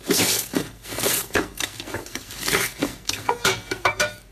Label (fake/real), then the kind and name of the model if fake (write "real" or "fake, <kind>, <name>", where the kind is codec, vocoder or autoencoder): fake, codec, SNAC